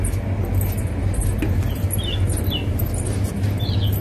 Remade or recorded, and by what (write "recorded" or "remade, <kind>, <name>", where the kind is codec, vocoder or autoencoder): recorded